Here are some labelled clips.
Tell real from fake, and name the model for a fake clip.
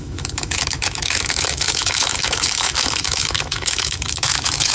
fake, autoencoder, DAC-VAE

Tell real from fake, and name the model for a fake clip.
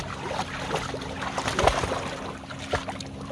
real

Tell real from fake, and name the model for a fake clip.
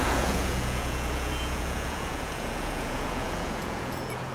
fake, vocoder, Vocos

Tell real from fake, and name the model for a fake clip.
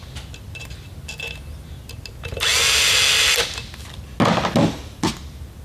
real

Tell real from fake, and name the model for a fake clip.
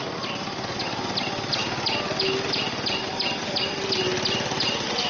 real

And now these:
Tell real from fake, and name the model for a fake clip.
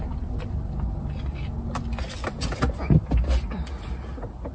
real